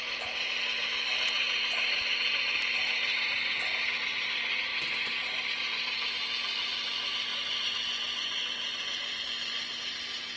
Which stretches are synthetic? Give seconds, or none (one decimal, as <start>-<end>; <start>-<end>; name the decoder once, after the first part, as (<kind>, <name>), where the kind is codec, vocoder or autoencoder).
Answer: 4.7-5.4 (vocoder, Vocos); 7.3-9.7